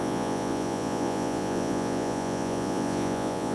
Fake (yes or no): yes